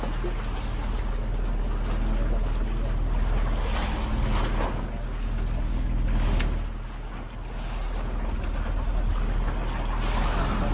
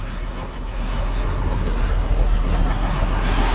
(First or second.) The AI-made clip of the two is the second